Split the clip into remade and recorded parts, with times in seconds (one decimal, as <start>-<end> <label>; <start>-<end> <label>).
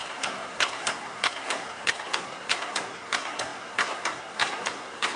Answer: 0.0-5.2 remade